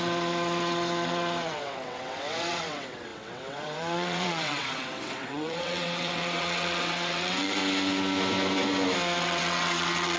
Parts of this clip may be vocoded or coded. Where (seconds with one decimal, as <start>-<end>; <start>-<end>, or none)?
0.0-7.6; 9.2-10.2